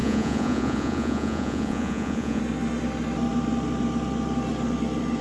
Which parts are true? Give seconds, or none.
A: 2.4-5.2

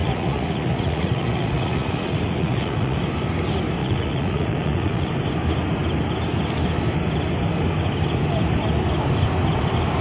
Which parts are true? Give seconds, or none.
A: 3.0-3.8; 5.1-10.0

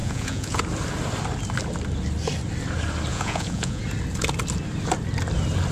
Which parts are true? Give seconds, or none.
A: 0.6-3.1; 3.8-5.7

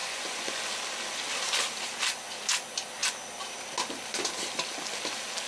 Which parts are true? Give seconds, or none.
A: 0.6-5.5

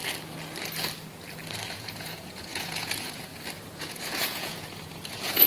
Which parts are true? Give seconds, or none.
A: 0.0-1.8; 3.3-3.8

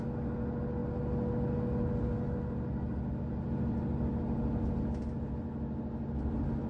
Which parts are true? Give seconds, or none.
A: 0.0-6.7